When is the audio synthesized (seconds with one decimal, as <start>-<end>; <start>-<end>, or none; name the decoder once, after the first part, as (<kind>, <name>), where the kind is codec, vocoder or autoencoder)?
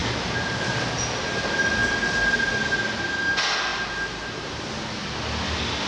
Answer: 0.0-0.9 (vocoder, BigVGAN v2); 3.7-4.7